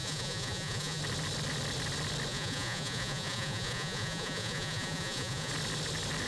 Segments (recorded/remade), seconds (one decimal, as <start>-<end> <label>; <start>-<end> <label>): 0.0-1.0 remade; 1.0-2.3 recorded; 2.3-5.5 remade; 5.5-6.3 recorded